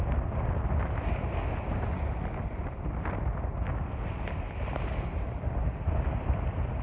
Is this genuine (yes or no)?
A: yes